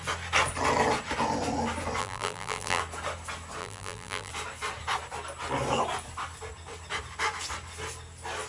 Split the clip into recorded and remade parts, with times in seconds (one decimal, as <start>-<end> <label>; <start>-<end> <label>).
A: 0.0-2.0 recorded; 2.0-2.8 remade; 2.8-3.6 recorded; 3.6-4.3 remade; 4.3-8.5 recorded